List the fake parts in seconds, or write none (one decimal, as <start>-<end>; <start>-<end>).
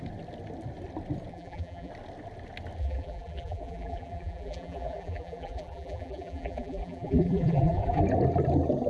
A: 1.3-1.9; 2.8-8.0